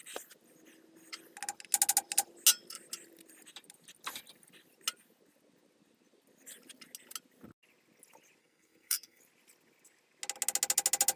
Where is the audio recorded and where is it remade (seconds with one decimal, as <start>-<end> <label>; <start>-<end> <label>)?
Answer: 0.0-8.4 recorded; 8.4-9.2 remade; 9.2-11.2 recorded